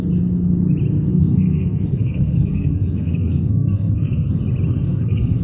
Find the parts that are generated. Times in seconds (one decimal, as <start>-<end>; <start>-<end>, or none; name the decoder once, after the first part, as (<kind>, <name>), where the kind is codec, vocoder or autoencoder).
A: 1.1-4.3 (codec, SNAC); 4.7-5.4